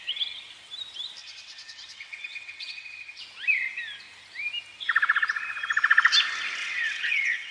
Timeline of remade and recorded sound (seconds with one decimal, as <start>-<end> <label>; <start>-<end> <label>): 0.0-1.2 recorded; 1.2-3.2 remade; 3.2-6.6 recorded; 6.6-7.5 remade